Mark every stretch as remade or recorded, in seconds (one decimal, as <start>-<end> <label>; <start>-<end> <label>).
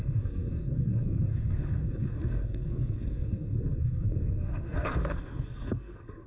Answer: 0.0-6.3 remade